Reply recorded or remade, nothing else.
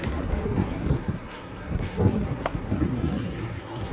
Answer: remade